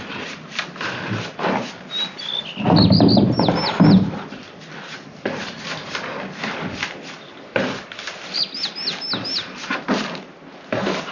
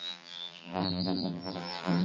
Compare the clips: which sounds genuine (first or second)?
first